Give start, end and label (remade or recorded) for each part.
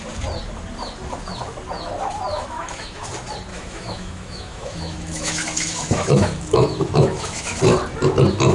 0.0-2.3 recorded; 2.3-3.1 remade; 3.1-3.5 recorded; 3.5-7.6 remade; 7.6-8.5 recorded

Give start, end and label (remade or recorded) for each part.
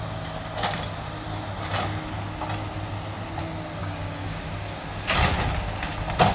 0.0-3.8 recorded; 3.8-4.4 remade; 4.4-6.3 recorded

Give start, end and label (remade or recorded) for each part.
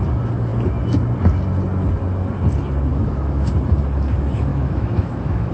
0.0-2.9 recorded; 2.9-3.5 remade; 3.5-4.5 recorded; 4.5-5.5 remade